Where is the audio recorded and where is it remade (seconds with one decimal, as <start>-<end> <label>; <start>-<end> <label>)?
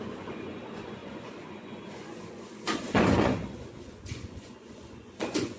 0.0-5.6 remade